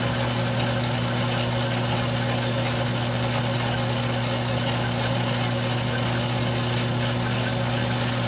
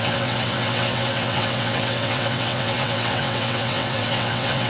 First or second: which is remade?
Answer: second